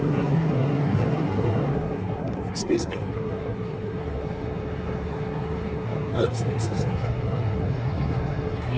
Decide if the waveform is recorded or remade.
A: remade